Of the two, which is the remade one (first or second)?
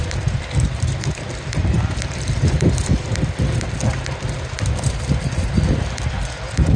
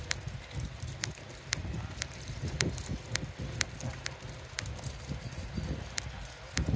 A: first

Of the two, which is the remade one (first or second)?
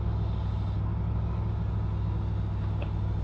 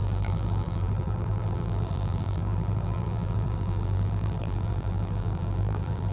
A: second